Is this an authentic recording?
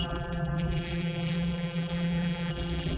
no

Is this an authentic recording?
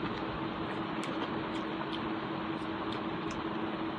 yes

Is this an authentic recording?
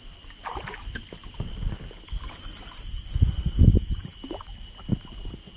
yes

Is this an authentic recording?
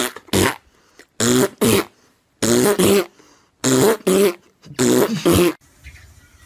yes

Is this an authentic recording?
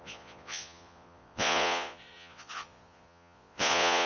no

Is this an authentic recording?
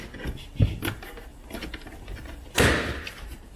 yes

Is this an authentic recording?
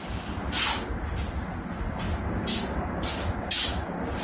yes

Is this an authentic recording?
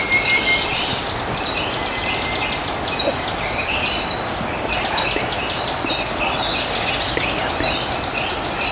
yes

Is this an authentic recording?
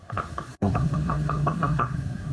no